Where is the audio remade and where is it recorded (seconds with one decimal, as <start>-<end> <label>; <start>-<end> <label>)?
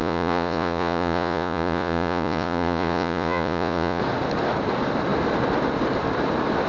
0.0-4.0 remade; 4.0-6.7 recorded